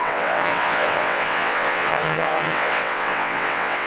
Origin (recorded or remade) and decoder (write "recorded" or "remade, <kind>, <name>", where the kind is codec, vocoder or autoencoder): remade, vocoder, WaveNeXt